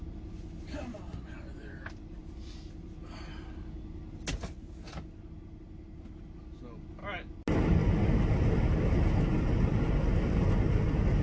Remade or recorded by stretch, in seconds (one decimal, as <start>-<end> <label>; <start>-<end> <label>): 0.0-0.7 recorded; 0.7-1.8 remade; 1.8-11.2 recorded